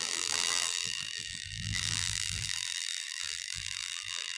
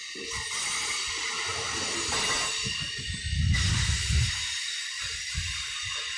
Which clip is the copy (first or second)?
first